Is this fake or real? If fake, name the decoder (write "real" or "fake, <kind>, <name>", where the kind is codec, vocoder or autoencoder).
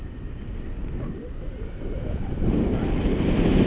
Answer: real